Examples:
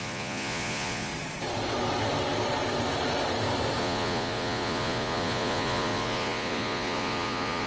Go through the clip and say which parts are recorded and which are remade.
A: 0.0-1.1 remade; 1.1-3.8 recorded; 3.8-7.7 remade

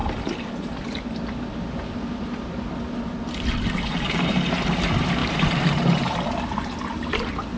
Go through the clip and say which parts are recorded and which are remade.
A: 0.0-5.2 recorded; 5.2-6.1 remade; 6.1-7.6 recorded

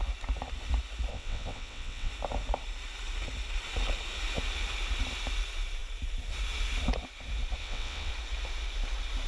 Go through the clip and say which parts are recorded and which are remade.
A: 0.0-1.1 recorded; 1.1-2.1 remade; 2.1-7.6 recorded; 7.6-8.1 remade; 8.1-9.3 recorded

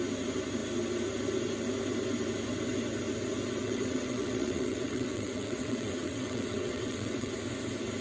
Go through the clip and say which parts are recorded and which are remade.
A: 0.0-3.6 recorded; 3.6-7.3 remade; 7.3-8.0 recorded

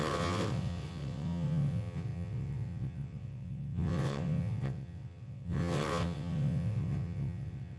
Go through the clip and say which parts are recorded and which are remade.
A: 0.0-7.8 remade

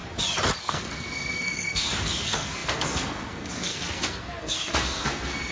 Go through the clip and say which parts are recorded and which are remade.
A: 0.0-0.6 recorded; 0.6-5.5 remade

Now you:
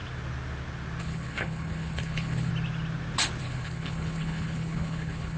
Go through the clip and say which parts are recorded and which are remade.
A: 0.0-1.0 recorded; 1.0-2.5 remade; 2.5-3.4 recorded; 3.4-5.4 remade